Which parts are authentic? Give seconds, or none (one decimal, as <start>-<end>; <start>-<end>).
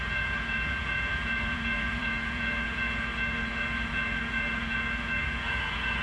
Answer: none